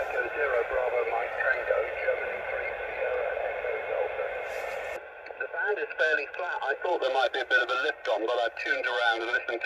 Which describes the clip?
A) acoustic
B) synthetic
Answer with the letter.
A